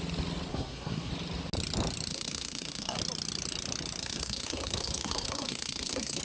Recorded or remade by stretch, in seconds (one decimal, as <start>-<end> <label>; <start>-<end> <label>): 0.0-0.5 recorded; 0.5-1.1 remade; 1.1-2.1 recorded; 2.1-3.0 remade; 3.0-4.0 recorded; 4.0-6.2 remade